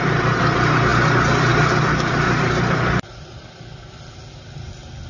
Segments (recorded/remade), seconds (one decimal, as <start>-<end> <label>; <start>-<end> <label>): 0.0-5.1 recorded